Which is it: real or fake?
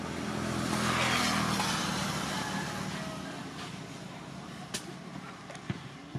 real